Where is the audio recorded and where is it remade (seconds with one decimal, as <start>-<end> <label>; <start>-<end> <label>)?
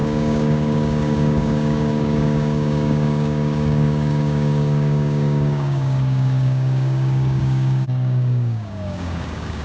0.0-9.6 remade